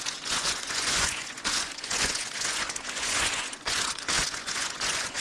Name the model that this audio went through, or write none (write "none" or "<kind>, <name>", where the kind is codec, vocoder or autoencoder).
vocoder, Vocos